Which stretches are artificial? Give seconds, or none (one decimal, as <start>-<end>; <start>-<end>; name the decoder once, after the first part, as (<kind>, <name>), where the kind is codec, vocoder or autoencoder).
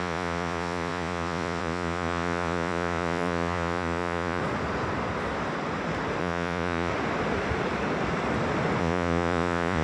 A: 0.0-4.4 (vocoder, Vocos); 6.2-6.9; 8.8-9.8